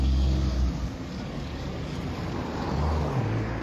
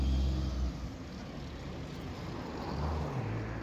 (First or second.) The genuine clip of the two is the second